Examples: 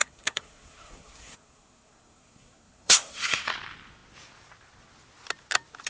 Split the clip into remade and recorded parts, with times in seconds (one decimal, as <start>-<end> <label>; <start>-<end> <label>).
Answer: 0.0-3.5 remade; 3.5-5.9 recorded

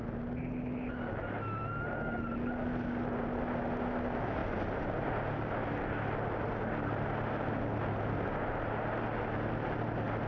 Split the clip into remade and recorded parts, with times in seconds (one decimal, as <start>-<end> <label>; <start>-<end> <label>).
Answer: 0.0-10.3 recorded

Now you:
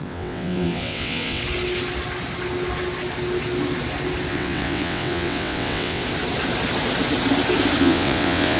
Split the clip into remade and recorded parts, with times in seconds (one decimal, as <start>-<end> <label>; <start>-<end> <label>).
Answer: 0.0-1.4 remade; 1.4-4.3 recorded; 4.3-6.0 remade; 6.0-7.8 recorded; 7.8-8.6 remade

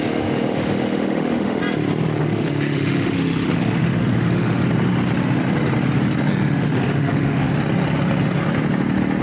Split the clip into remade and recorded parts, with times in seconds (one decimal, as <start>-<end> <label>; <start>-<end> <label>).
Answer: 0.0-1.6 remade; 1.6-2.2 recorded; 2.2-4.6 remade; 4.6-6.3 recorded; 6.3-7.5 remade; 7.5-9.2 recorded